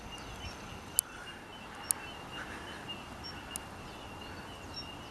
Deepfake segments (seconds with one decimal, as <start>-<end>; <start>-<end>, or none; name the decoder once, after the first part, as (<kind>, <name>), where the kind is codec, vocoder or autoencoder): none